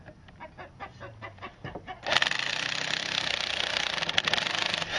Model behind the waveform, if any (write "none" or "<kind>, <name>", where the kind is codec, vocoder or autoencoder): none